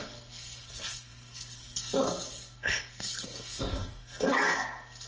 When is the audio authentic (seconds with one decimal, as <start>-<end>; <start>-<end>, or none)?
none